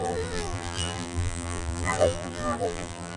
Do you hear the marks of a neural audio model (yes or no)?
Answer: yes